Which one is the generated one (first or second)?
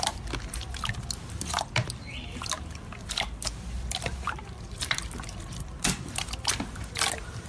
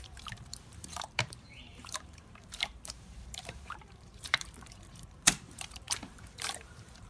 second